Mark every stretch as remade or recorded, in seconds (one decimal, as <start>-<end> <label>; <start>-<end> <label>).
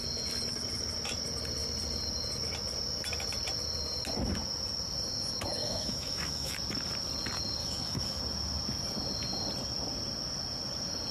0.0-5.6 recorded; 5.6-6.5 remade; 6.5-7.6 recorded; 7.6-8.2 remade; 8.2-11.1 recorded